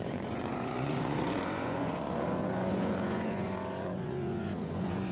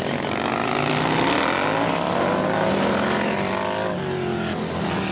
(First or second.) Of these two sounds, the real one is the second